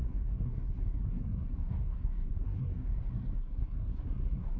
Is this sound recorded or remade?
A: remade